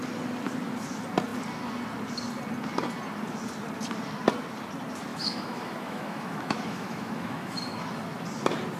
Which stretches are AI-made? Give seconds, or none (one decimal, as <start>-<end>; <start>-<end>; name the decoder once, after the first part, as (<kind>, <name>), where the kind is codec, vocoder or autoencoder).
5.1-7.8 (autoencoder, DAC-VAE)